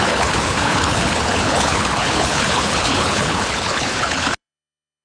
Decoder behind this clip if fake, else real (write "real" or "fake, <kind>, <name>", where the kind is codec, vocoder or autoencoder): fake, codec, HILCodec